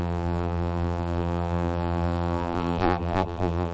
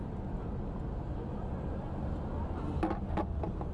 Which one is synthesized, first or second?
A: first